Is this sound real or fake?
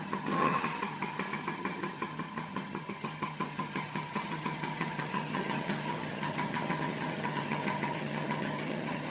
fake